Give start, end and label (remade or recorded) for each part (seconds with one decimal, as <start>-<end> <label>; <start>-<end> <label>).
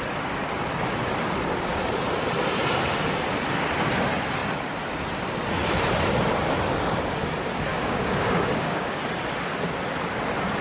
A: 0.0-7.7 recorded; 7.7-9.0 remade; 9.0-10.6 recorded